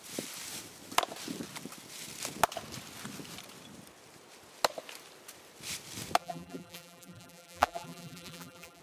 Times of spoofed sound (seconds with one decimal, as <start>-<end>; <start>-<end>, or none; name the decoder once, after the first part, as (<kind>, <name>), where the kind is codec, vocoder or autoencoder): 6.2-8.8 (vocoder, BigVGAN v2)